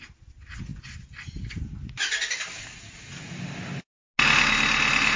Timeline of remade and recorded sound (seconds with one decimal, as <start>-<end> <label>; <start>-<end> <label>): 0.0-5.2 recorded